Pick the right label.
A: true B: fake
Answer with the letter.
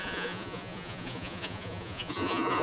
B